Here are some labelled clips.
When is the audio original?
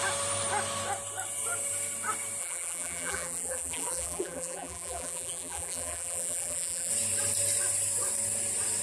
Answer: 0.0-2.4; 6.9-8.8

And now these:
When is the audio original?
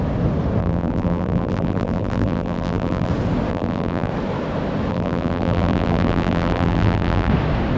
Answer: 0.0-0.6; 3.1-3.5; 4.1-4.9; 7.3-7.8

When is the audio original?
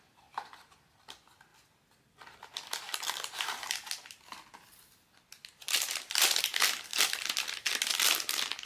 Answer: 0.0-8.7